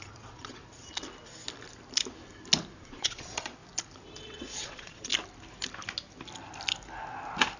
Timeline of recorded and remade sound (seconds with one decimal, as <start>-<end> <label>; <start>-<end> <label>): 0.0-0.6 remade; 0.6-2.8 recorded; 2.8-3.6 remade; 3.6-4.2 recorded; 4.2-5.1 remade; 5.1-7.6 recorded